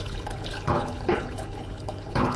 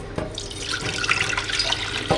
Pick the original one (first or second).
second